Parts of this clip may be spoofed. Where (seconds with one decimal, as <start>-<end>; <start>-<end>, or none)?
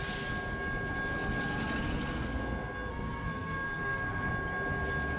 2.9-4.3